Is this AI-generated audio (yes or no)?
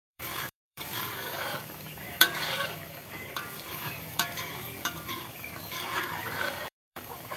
yes